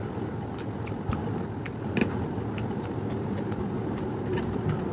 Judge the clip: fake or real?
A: real